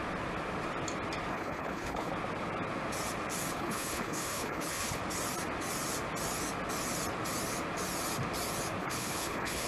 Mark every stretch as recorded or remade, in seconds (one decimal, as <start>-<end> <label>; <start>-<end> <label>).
0.0-1.3 recorded; 1.3-2.1 remade; 2.1-3.5 recorded; 3.5-5.0 remade; 5.0-8.8 recorded; 8.8-9.7 remade